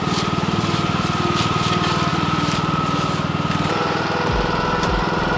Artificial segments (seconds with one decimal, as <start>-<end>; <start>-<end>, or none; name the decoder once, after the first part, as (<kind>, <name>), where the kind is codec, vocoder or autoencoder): none